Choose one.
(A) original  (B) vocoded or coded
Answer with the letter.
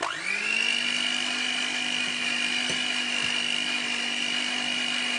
A